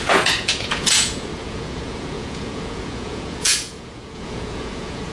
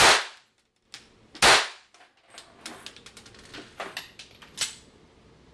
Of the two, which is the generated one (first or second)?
first